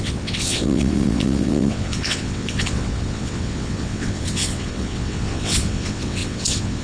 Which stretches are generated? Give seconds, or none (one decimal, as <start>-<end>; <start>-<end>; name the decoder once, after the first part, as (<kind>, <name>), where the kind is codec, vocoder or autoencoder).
0.0-6.8 (vocoder, WaveNeXt)